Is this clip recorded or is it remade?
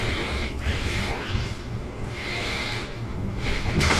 remade